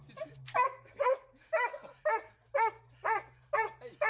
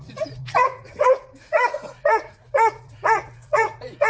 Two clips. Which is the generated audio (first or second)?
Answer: second